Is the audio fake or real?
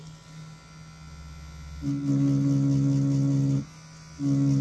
real